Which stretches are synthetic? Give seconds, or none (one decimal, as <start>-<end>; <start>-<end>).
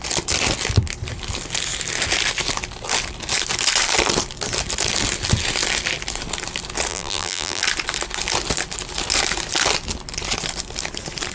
6.9-7.6